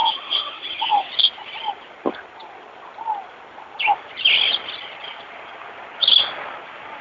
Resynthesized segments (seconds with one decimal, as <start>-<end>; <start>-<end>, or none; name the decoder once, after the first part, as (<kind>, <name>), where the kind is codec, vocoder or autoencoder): 0.0-1.1 (vocoder, WaveNeXt)